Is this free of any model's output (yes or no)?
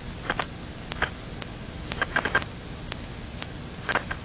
yes